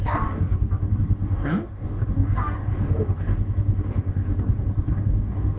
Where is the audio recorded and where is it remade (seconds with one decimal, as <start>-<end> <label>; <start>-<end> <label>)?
0.0-5.6 remade